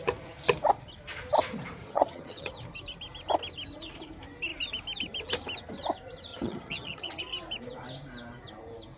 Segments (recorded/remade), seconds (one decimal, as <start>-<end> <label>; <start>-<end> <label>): 0.0-1.8 recorded; 1.8-2.5 remade; 2.5-6.3 recorded; 6.3-7.2 remade; 7.2-9.0 recorded